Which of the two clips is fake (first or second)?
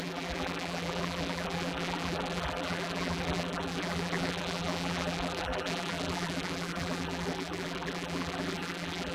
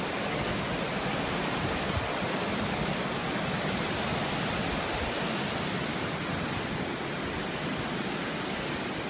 first